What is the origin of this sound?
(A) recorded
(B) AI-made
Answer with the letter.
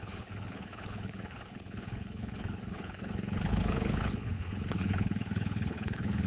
B